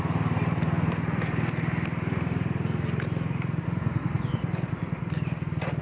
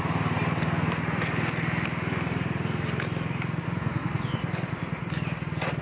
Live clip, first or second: second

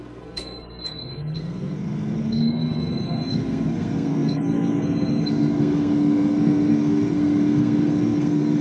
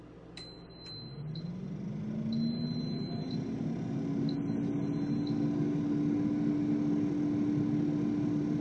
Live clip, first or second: second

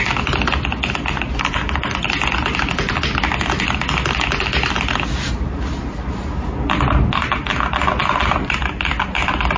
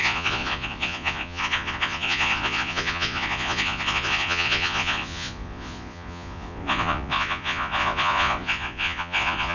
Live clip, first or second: first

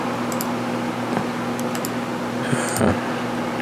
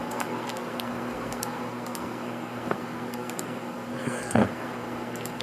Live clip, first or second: first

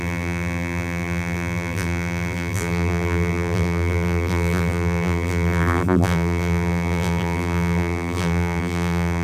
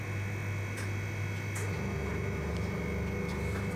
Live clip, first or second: second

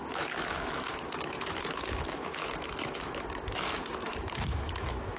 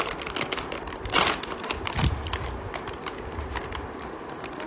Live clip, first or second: second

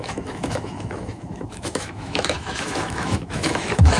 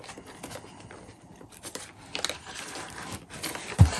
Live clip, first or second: second